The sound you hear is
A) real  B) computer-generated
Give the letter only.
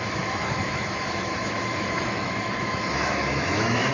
B